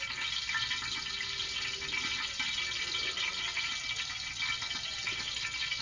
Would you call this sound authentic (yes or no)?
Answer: yes